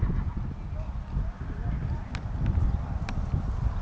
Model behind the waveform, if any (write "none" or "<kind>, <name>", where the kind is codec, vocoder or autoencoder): none